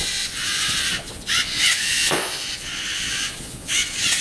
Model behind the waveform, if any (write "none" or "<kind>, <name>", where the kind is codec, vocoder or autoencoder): vocoder, Vocos